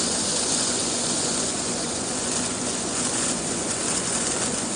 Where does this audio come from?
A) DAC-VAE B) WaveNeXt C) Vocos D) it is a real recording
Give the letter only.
C